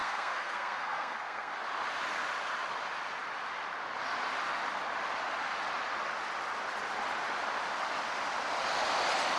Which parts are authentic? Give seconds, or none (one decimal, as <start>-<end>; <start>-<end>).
1.5-9.4